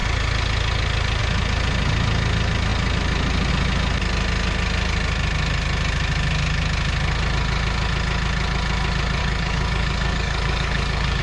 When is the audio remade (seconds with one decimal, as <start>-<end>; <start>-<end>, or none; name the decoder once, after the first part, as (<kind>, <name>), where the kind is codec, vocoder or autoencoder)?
9.2-11.2 (codec, DAC)